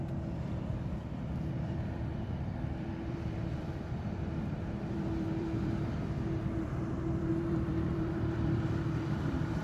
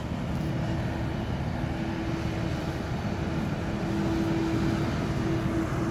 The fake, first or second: first